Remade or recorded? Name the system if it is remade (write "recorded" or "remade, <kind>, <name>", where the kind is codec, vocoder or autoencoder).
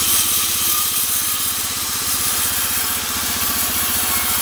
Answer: remade, vocoder, BigVGAN v2